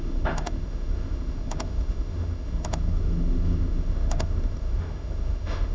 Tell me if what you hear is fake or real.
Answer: fake